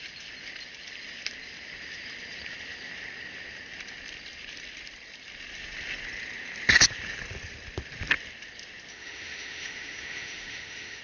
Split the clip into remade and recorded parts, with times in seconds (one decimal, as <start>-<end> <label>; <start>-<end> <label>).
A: 0.0-8.9 recorded; 8.9-11.0 remade

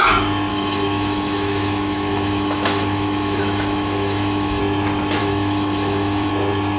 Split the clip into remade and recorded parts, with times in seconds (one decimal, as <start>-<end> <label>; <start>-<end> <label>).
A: 0.0-0.5 recorded; 0.5-4.6 remade; 4.6-5.2 recorded; 5.2-6.3 remade; 6.3-6.8 recorded